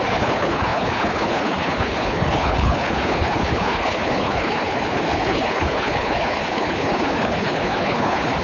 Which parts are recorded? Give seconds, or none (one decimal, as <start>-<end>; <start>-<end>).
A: none